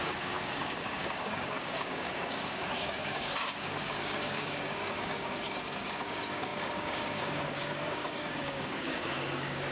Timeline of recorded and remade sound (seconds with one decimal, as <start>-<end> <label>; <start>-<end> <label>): 0.0-9.7 remade